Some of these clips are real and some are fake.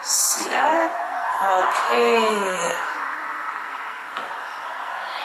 fake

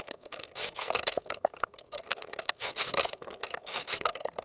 fake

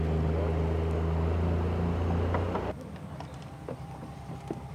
real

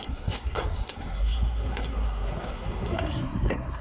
fake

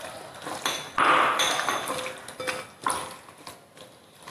real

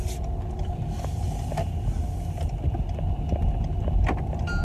real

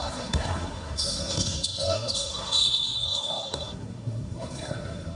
fake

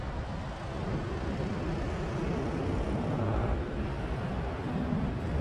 real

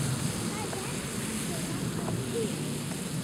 real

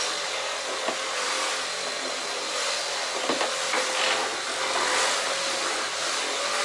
real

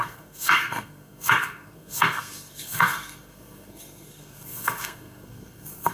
fake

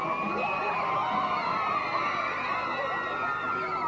real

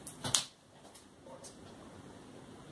real